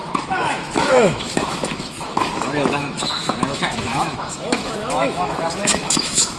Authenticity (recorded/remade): remade